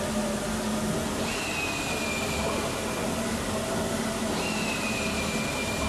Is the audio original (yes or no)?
yes